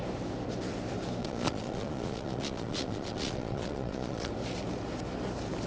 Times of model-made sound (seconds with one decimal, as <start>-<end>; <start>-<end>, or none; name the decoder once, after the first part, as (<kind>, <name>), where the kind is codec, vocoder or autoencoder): 1.2-4.3 (vocoder, Vocos)